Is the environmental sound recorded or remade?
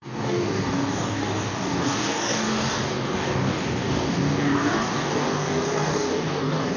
remade